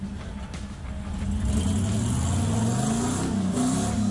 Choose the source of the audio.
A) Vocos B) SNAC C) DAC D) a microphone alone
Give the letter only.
D